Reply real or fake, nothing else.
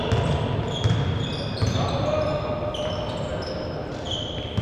real